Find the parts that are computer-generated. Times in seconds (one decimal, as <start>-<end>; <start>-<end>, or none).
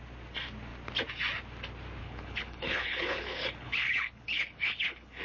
2.0-5.2